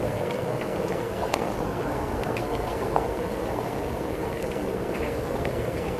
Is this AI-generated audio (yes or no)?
yes